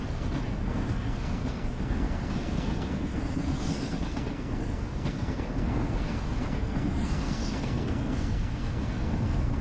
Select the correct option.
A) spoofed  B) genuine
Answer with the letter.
A